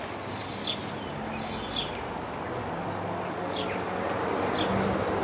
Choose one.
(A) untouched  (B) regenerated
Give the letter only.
A